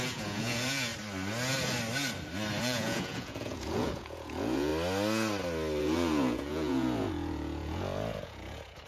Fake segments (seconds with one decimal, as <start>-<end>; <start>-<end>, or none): 0.0-0.9; 2.6-4.7; 5.8-8.9